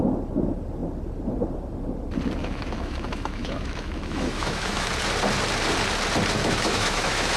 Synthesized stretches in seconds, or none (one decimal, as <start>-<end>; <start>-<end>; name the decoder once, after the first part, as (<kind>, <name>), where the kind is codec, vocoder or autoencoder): 2.4-4.9 (autoencoder, DAC-VAE); 6.4-7.4